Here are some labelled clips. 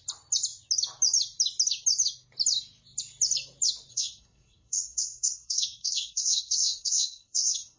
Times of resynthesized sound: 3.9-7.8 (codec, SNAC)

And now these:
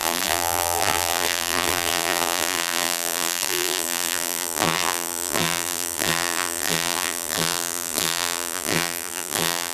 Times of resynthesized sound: 0.0-9.7 (vocoder, BigVGAN v2)